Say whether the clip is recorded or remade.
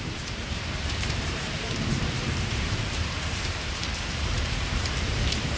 remade